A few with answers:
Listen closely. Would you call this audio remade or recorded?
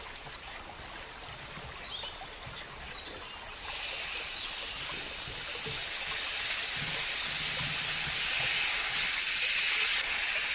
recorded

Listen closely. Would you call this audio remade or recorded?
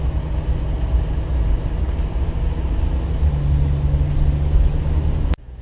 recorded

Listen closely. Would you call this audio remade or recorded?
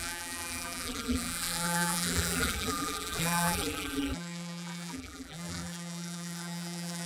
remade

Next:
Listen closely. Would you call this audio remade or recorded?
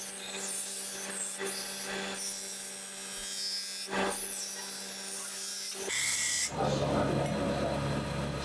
recorded